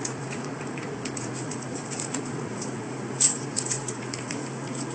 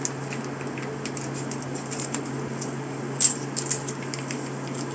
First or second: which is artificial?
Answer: first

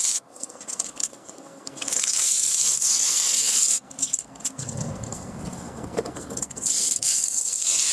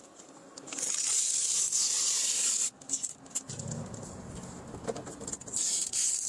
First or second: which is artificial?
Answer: first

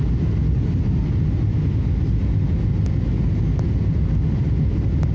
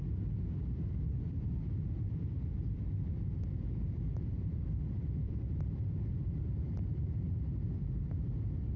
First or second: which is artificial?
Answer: second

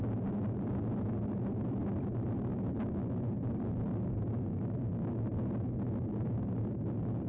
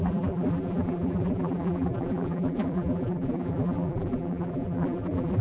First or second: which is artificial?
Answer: second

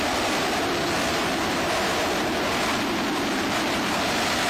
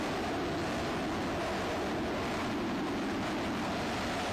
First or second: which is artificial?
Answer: first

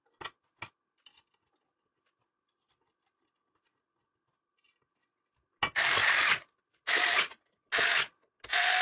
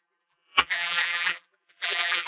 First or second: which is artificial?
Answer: second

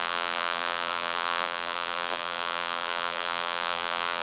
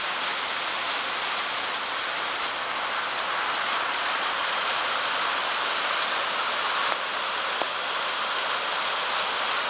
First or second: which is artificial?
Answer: first